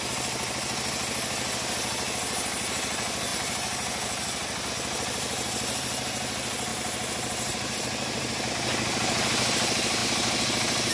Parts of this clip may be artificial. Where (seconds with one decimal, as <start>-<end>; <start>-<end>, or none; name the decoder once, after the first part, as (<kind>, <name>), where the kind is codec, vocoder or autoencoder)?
6.7-8.5 (vocoder, BigVGAN v2)